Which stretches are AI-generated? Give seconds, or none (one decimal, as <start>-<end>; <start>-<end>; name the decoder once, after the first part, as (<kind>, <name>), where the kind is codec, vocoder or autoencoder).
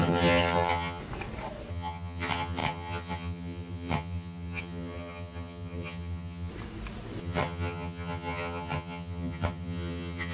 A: 0.0-1.0 (vocoder, HiFi-GAN); 1.7-6.5; 7.2-10.3